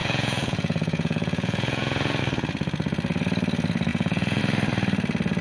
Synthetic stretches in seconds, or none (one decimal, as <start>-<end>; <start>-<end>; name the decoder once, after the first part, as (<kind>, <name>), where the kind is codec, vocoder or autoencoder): 0.0-2.2 (vocoder, Vocos); 3.9-4.4